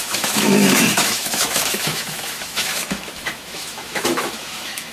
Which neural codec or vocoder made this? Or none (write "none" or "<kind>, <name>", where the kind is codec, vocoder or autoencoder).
autoencoder, DAC-VAE